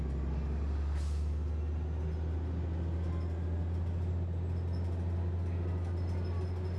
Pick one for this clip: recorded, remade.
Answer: recorded